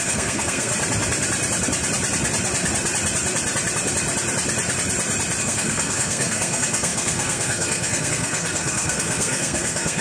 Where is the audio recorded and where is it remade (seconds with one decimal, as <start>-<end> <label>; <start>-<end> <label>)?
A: 0.0-0.7 remade; 0.7-5.4 recorded; 5.4-10.0 remade